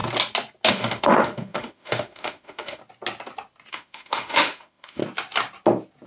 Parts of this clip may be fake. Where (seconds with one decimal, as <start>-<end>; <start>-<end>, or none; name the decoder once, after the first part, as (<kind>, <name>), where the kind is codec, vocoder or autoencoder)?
0.7-2.8 (autoencoder, DAC-VAE); 3.7-5.0